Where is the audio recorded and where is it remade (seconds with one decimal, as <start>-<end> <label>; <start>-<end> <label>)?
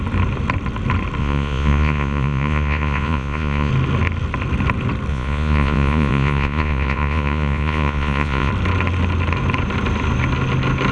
0.0-1.2 recorded; 1.2-3.7 remade; 3.7-5.1 recorded; 5.1-8.5 remade; 8.5-10.9 recorded